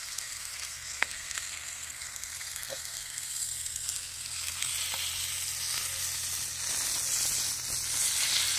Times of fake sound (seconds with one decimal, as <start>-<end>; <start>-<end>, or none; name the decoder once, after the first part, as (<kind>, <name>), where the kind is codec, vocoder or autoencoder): 0.0-4.7 (codec, SNAC)

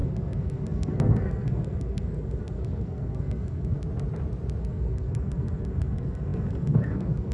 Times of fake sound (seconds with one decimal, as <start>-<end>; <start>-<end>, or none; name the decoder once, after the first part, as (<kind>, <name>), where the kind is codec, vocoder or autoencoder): 0.0-3.8 (codec, SNAC); 4.6-7.3

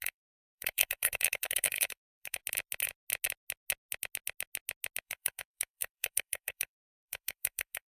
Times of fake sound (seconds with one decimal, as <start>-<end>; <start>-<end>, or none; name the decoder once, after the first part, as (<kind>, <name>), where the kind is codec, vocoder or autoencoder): 0.0-2.4 (codec, SNAC); 5.0-7.9

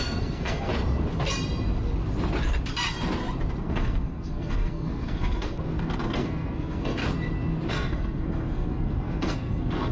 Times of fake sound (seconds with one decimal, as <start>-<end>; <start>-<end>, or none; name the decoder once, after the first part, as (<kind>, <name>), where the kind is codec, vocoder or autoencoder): 0.0-0.7 (codec, SNAC); 3.6-7.0; 7.7-9.9

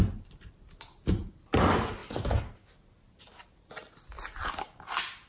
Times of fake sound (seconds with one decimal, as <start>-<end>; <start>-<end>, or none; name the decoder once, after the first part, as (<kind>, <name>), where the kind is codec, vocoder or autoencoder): none